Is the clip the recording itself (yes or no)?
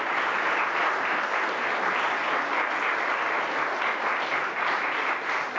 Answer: yes